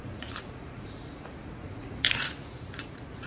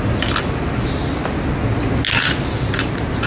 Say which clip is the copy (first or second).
first